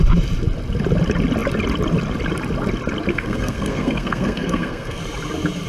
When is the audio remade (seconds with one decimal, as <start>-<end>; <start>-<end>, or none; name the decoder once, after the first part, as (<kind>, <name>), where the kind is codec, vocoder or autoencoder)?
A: 3.1-5.0 (codec, SNAC)